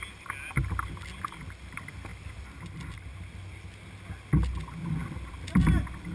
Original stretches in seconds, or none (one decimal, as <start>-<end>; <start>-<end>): 0.0-2.1; 3.4-5.0; 5.6-6.1